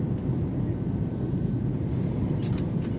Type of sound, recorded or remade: recorded